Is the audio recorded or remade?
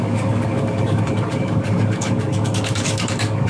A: remade